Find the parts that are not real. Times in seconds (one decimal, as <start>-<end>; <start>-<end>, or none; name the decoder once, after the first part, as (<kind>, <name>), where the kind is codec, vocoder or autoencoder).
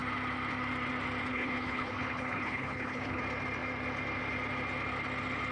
1.3-3.2 (codec, HILCodec)